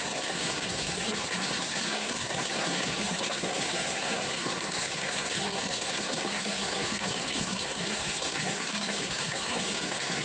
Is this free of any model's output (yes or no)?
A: no